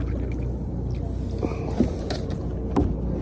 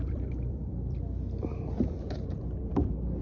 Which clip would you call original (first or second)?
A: first